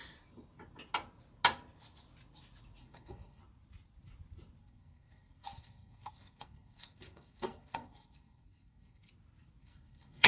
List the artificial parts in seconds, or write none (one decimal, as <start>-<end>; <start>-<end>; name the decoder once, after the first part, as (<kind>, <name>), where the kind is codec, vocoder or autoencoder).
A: 2.8-3.4 (codec, SNAC); 4.6-9.1; 9.6-10.3